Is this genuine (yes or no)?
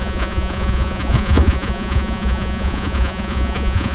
no